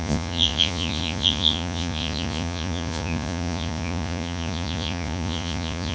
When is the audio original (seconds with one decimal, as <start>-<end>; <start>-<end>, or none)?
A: none